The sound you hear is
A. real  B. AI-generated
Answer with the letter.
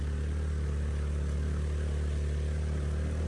A